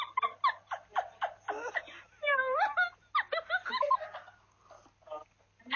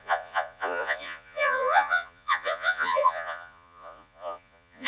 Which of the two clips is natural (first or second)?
first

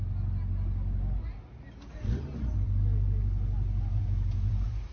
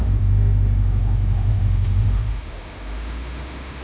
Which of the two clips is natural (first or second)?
first